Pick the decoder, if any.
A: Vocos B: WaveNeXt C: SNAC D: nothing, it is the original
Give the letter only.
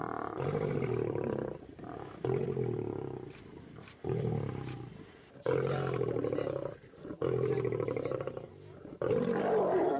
D